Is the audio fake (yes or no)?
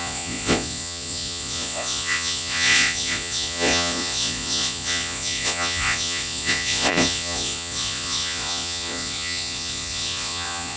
yes